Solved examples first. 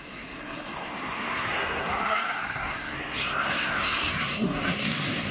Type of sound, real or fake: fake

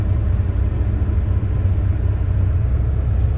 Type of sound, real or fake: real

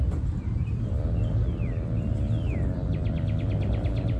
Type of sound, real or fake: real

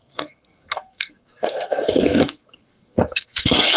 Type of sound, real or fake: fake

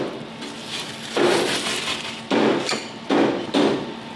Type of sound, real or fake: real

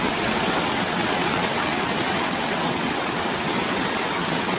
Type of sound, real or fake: fake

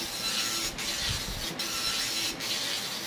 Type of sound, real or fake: real